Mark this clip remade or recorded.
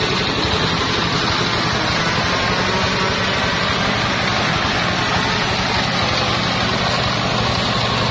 recorded